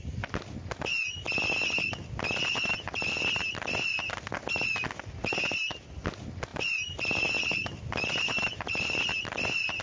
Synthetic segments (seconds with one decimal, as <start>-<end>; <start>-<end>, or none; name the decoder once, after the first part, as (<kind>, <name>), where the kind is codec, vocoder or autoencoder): 6.5-9.1 (vocoder, BigVGAN v2)

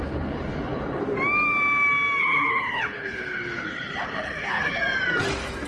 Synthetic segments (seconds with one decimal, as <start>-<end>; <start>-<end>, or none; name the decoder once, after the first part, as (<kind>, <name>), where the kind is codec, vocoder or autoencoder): 0.0-1.0 (codec, HILCodec); 2.2-4.8